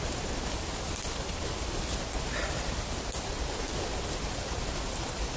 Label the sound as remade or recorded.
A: recorded